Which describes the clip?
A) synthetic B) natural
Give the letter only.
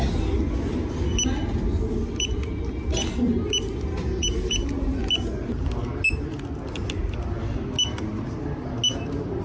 B